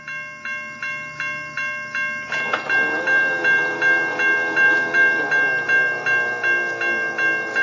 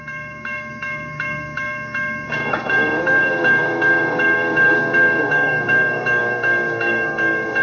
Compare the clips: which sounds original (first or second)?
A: first